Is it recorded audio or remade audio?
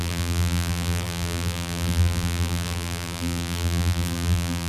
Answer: remade